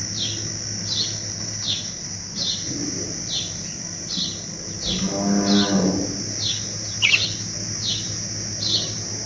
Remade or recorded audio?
recorded